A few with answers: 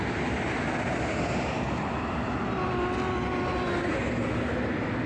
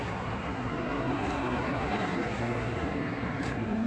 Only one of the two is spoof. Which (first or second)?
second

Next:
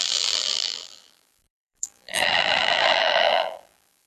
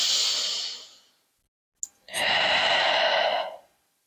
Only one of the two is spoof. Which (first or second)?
first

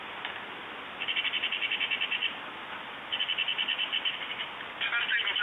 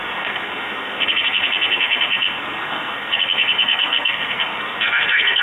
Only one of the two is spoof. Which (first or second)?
second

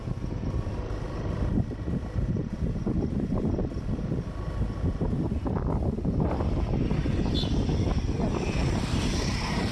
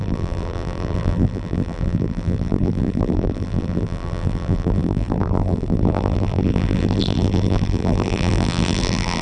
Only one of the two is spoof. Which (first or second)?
second